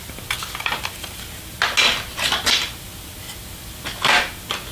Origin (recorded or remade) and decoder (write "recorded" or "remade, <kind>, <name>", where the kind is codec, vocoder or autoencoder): recorded